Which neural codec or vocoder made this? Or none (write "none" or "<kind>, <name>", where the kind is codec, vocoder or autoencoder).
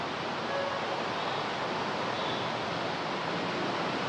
none